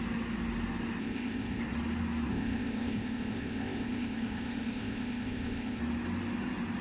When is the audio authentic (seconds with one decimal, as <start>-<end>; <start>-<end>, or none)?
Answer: 0.0-1.0; 1.6-2.3; 5.8-6.8